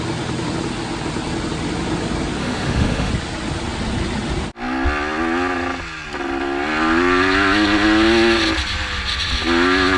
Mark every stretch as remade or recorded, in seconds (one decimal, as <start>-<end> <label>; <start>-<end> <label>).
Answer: 0.0-2.4 recorded; 2.4-3.1 remade; 3.1-10.0 recorded